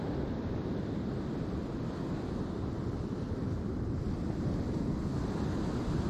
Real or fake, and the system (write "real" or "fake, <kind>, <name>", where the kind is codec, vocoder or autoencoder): fake, vocoder, BigVGAN v2